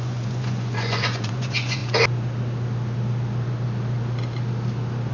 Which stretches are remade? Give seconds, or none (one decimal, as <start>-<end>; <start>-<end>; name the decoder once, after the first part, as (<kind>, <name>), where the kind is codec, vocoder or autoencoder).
0.0-1.8 (vocoder, Vocos)